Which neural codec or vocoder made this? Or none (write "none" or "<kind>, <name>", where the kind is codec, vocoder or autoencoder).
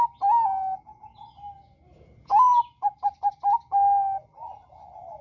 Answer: none